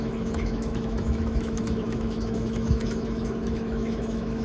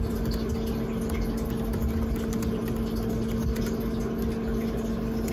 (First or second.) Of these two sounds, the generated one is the first